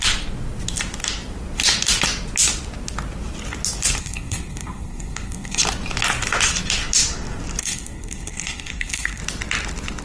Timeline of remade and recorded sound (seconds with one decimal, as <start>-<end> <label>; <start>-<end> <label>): 0.0-4.0 recorded; 4.0-5.6 remade; 5.6-7.6 recorded; 7.6-9.2 remade; 9.2-10.0 recorded

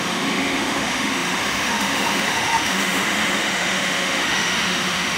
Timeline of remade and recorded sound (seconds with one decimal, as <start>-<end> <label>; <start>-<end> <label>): 0.0-5.2 remade